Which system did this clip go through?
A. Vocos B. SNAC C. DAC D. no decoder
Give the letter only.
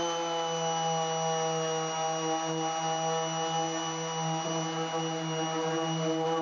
D